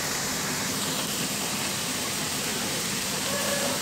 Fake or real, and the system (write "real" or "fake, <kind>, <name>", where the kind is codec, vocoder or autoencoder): fake, vocoder, BigVGAN v2